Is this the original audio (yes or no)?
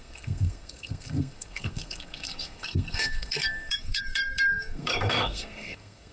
no